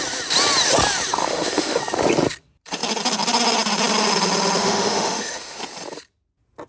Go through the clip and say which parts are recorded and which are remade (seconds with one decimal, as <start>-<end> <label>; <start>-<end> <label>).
0.0-1.2 recorded; 1.2-1.8 remade; 1.8-4.6 recorded; 4.6-5.6 remade; 5.6-6.7 recorded